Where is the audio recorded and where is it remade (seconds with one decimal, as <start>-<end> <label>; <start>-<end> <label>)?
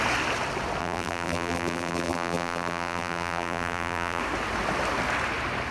0.0-0.8 recorded; 0.8-4.2 remade; 4.2-5.7 recorded